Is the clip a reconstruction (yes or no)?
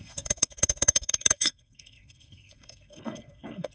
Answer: yes